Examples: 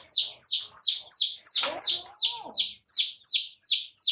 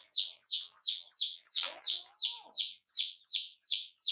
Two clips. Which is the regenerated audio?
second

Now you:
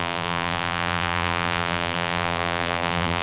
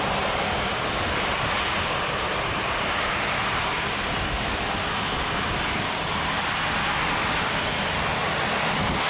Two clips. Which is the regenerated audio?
first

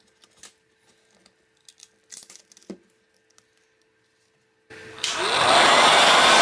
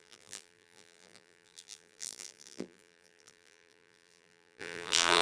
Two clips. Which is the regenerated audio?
second